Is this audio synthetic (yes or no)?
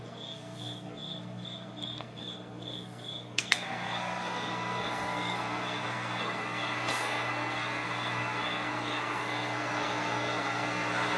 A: yes